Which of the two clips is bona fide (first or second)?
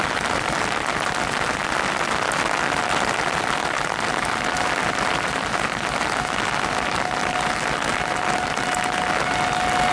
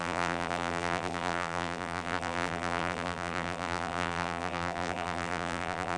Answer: first